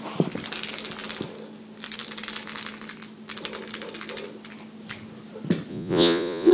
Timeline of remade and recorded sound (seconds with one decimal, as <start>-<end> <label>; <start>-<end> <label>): 0.0-5.7 recorded; 5.7-6.5 remade